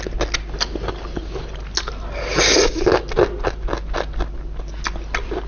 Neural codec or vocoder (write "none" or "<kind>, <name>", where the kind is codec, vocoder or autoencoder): none